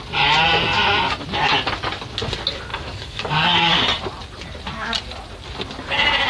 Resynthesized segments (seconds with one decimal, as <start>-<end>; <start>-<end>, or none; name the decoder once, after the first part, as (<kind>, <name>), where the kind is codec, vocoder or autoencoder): 2.7-3.8 (codec, DAC)